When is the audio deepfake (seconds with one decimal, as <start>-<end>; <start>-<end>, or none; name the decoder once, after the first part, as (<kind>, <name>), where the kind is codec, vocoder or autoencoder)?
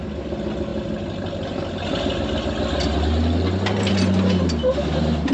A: none